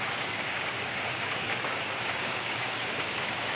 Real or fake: fake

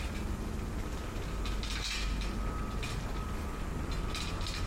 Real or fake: real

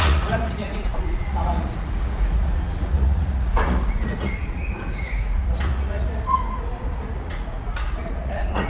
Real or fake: fake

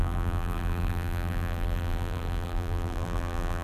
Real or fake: fake